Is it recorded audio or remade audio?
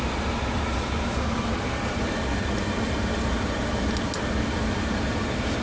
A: recorded